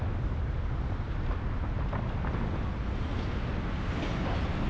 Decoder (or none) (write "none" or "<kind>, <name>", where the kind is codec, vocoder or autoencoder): none